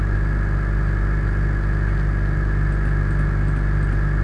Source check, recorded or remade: recorded